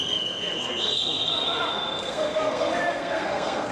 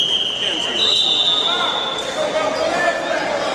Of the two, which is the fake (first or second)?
first